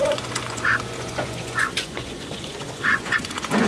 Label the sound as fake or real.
fake